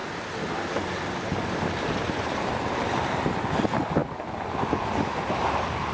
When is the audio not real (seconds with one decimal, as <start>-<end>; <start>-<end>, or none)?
2.1-4.0; 4.7-5.9